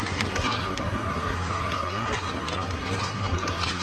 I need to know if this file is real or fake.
fake